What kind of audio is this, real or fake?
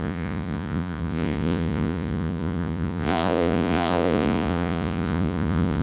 fake